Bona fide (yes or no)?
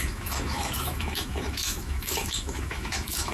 no